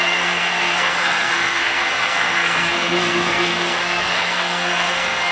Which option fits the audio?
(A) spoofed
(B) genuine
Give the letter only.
A